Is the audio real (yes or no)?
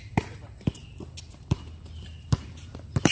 no